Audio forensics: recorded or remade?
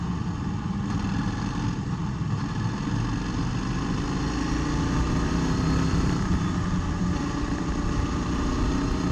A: recorded